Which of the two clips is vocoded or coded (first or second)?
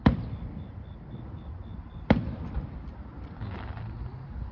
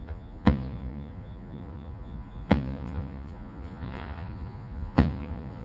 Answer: second